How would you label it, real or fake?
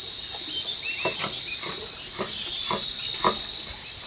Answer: real